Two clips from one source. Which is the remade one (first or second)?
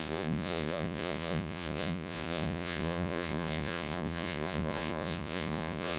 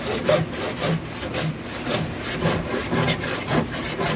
first